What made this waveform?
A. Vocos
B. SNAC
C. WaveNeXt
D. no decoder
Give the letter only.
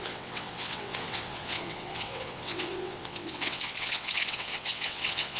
C